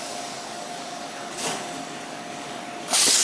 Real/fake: fake